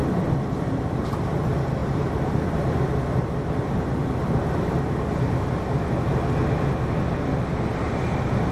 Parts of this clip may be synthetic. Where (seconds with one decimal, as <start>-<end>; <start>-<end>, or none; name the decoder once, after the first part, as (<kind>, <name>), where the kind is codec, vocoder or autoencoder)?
0.0-0.7 (vocoder, BigVGAN v2); 1.8-4.7